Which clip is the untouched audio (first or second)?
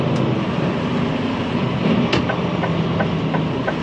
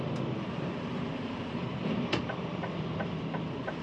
first